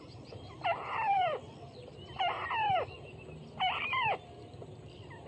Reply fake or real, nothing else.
fake